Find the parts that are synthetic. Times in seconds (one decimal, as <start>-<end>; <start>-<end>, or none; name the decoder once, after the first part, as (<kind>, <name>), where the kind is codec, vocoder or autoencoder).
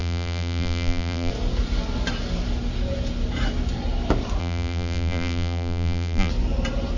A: 0.0-1.3 (vocoder, BigVGAN v2); 4.4-6.3